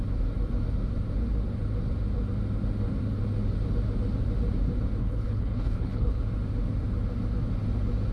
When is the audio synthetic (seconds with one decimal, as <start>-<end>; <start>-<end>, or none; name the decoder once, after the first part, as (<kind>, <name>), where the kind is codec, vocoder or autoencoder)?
5.0-6.2 (codec, HILCodec)